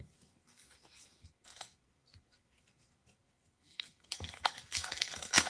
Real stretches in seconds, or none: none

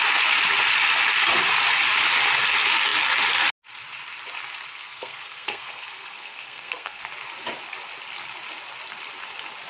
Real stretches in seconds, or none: 0.0-4.7; 7.0-9.7

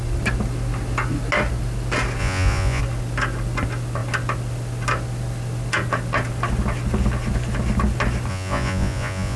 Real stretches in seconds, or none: 0.0-2.2; 2.8-8.3

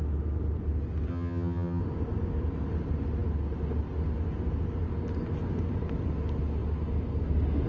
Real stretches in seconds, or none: 0.0-1.1; 1.8-7.7